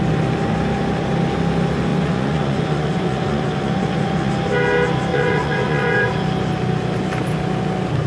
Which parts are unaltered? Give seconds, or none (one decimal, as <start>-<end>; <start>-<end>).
0.0-1.9; 4.3-5.1; 6.1-8.1